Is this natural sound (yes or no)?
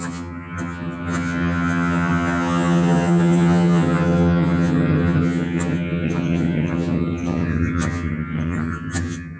no